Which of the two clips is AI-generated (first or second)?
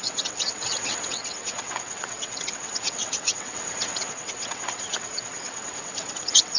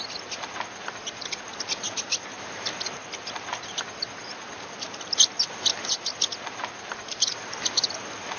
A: first